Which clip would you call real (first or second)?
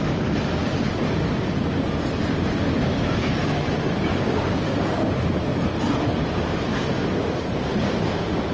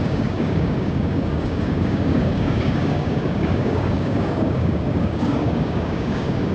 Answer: first